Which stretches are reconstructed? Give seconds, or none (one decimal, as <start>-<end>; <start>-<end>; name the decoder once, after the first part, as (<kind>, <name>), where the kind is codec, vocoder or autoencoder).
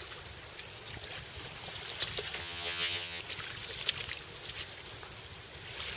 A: 2.4-3.2 (vocoder, HiFi-GAN)